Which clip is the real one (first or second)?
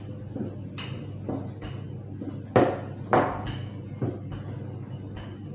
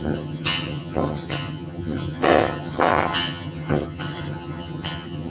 first